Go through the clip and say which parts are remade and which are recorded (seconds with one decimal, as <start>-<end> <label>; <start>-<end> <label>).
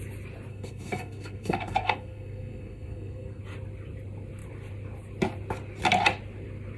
0.0-0.5 recorded; 0.5-3.4 remade; 3.4-6.8 recorded